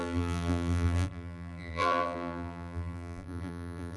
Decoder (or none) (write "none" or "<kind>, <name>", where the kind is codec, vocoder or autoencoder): vocoder, BigVGAN v2